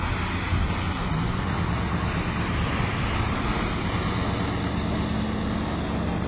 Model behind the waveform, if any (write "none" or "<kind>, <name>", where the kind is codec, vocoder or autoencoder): none